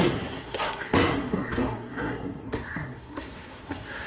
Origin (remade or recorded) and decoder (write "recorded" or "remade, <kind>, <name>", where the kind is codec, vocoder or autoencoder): remade, codec, SNAC